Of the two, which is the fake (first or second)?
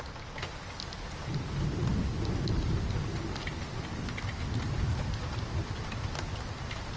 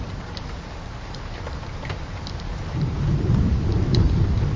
second